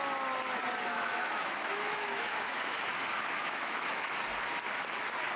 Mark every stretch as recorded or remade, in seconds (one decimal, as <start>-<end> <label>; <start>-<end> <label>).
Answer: 0.0-0.9 recorded; 0.9-4.1 remade; 4.1-5.4 recorded